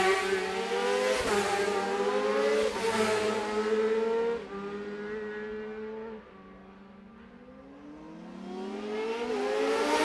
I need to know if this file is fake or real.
real